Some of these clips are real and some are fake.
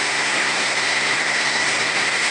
fake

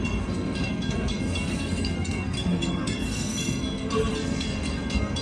fake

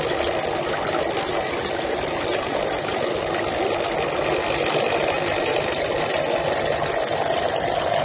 real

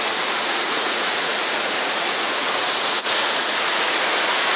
fake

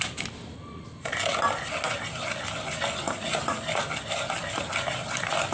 real